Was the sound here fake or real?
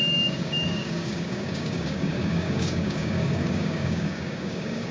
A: fake